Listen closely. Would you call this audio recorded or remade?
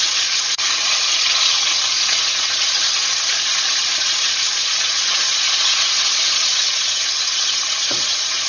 remade